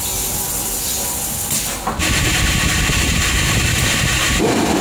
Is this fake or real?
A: real